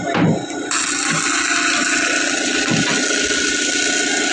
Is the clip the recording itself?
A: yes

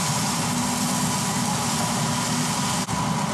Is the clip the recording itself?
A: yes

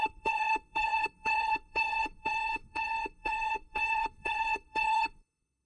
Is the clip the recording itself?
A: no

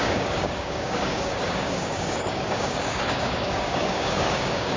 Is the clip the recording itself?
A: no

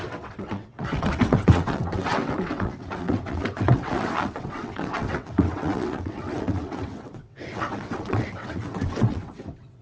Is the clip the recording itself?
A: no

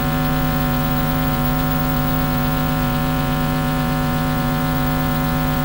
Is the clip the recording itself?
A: no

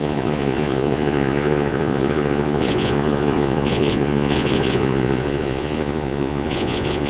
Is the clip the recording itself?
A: no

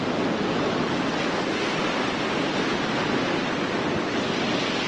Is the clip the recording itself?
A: yes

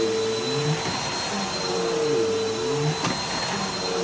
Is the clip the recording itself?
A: yes